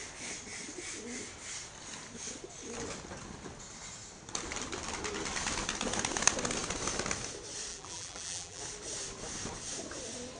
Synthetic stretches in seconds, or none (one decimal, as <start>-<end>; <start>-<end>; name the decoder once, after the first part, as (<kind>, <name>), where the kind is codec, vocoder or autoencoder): 7.7-8.6 (vocoder, BigVGAN v2)